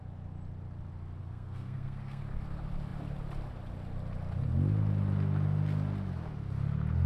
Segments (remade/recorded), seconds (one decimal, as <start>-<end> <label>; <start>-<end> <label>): 0.0-1.2 recorded; 1.2-2.2 remade; 2.2-7.1 recorded